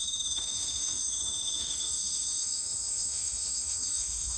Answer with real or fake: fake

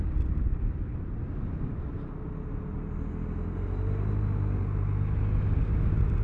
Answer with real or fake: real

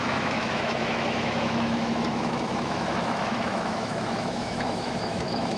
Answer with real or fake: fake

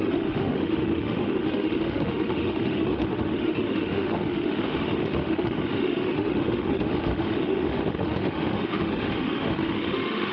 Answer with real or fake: fake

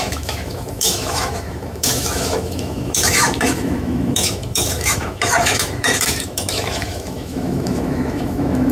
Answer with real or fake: fake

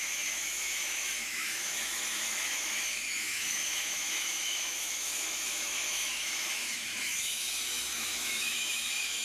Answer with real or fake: fake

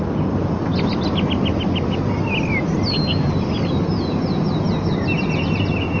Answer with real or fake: real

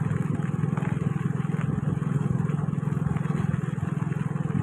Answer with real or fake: real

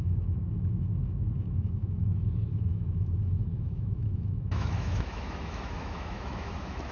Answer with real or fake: fake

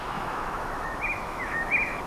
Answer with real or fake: fake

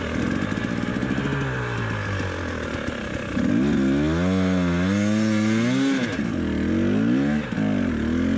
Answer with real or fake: real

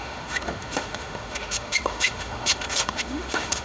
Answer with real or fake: fake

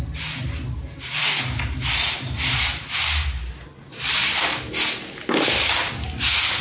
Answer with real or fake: real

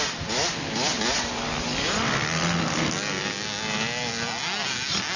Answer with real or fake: real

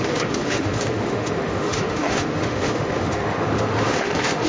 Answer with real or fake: fake